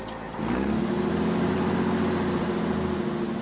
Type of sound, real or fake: real